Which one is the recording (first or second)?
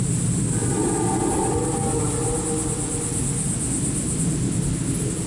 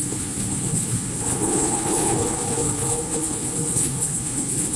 first